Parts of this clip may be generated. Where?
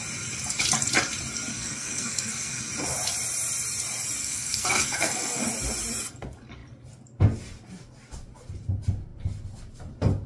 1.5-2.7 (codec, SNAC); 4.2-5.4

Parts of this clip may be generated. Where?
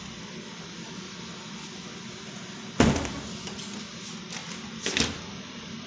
none